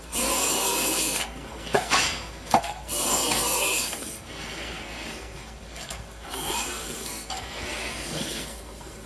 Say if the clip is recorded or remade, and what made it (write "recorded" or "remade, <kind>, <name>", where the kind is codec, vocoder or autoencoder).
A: remade, codec, SNAC